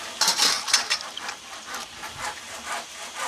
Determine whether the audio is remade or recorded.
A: remade